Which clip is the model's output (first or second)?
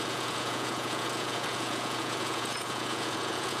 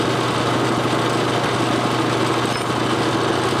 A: first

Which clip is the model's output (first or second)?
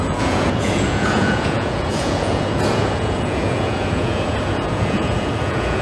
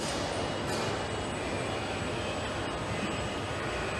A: first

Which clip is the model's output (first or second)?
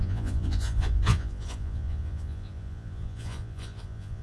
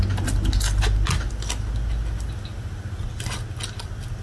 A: first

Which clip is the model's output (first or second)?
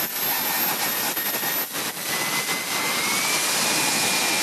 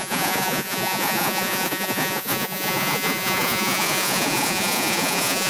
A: second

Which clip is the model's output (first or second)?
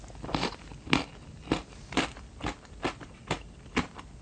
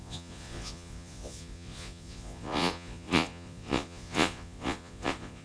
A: second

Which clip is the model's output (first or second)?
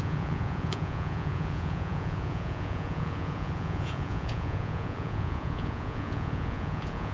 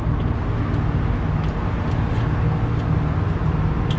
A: first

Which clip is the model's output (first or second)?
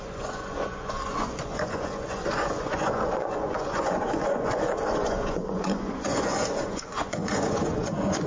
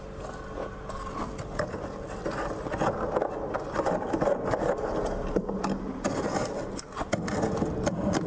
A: first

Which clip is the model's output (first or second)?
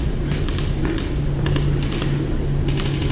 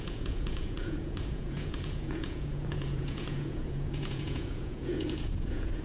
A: second